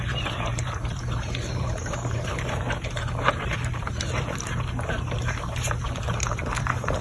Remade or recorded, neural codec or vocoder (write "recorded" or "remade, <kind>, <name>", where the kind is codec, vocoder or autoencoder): remade, vocoder, BigVGAN v2